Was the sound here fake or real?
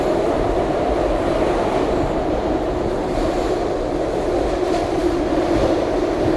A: real